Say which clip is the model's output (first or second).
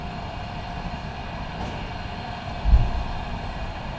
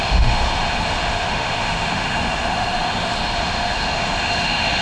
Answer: second